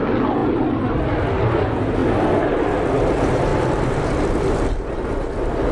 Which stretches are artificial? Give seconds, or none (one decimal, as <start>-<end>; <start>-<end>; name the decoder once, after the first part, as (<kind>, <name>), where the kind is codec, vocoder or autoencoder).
3.5-4.7 (vocoder, BigVGAN v2)